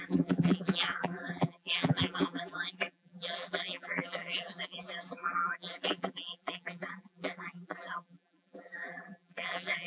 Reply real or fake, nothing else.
fake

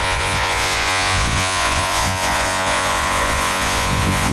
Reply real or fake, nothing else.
fake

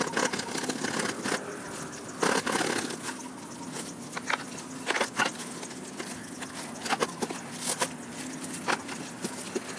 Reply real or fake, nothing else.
real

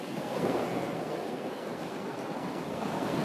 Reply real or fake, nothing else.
fake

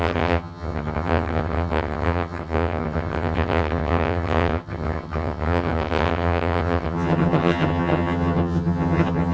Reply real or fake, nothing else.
fake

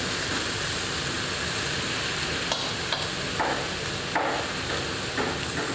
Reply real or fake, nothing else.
real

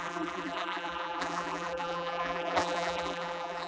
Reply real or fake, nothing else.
fake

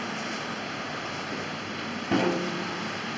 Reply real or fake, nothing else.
real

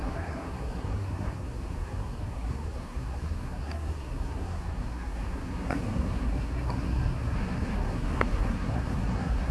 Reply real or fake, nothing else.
fake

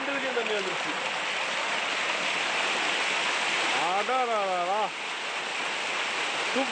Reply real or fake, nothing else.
real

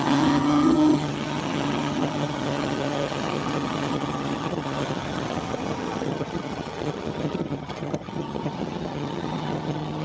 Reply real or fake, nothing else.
fake